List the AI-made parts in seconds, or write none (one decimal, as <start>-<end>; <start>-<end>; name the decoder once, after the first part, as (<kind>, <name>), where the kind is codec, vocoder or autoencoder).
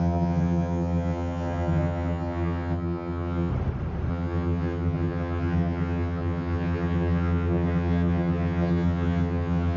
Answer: 0.0-3.5 (vocoder, HiFi-GAN); 4.1-9.8